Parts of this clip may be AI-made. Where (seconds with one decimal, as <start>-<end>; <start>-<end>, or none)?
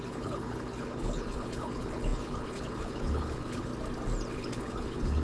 0.0-3.7; 4.3-5.2